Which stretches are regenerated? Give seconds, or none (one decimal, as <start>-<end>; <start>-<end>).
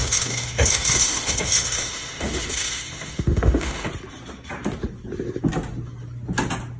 0.0-3.9